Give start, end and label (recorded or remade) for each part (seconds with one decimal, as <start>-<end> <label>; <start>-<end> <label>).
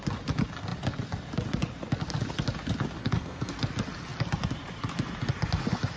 0.0-3.0 recorded; 3.0-3.5 remade; 3.5-6.0 recorded